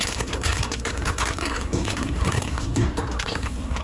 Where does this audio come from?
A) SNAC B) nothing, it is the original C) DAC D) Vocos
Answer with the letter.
A